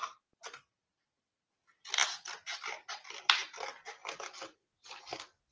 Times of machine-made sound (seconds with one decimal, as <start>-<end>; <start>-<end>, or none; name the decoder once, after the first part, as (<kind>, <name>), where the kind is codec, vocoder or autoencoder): none